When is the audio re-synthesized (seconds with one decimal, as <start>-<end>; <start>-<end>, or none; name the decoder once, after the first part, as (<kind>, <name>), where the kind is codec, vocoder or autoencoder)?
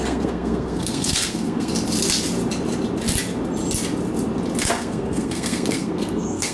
0.0-1.7 (codec, SNAC); 4.7-6.5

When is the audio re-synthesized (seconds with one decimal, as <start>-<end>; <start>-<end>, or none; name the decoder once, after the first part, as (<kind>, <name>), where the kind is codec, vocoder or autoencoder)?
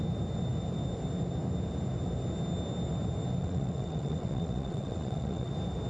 3.4-5.5 (vocoder, WaveNeXt)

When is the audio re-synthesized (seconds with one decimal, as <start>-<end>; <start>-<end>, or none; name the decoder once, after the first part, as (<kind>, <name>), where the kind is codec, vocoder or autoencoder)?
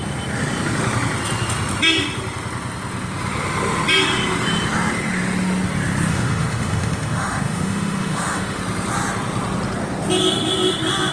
6.1-8.6 (autoencoder, DAC-VAE)